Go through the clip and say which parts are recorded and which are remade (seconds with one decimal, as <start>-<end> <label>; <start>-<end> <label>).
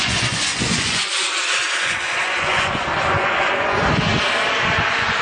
0.0-4.1 remade; 4.1-4.8 recorded; 4.8-5.2 remade